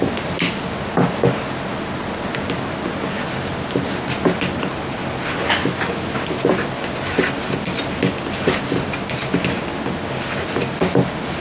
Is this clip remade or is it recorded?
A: recorded